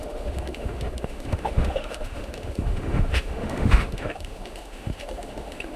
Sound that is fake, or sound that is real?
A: fake